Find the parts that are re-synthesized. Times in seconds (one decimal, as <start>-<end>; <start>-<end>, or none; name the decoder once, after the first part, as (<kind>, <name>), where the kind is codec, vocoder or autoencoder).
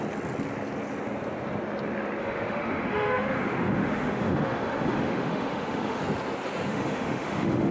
2.2-6.0 (autoencoder, DAC-VAE); 6.7-7.7